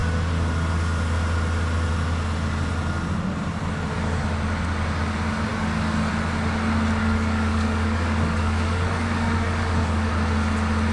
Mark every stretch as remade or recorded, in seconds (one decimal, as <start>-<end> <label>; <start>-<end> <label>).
0.0-5.5 recorded; 5.5-6.1 remade; 6.1-7.0 recorded; 7.0-10.1 remade; 10.1-10.9 recorded